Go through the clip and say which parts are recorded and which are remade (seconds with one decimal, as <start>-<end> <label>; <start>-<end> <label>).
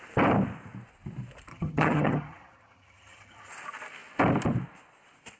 0.0-1.5 recorded; 1.5-3.5 remade; 3.5-5.4 recorded